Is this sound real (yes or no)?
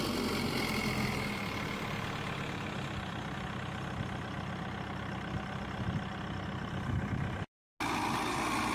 yes